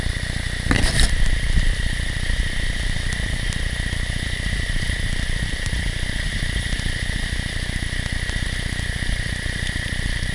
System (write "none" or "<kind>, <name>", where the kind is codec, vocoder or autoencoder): vocoder, BigVGAN v2